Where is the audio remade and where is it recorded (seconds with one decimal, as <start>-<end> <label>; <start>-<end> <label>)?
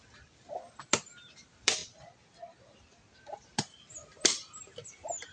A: 0.0-1.8 remade; 1.8-3.4 recorded; 3.4-5.3 remade